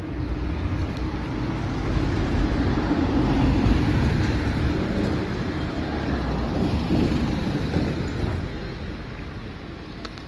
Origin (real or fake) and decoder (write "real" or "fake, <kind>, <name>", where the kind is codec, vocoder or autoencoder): real